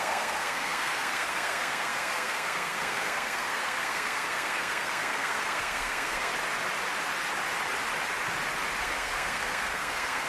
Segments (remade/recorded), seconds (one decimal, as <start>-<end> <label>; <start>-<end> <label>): 0.0-6.3 remade; 6.3-8.8 recorded; 8.8-10.3 remade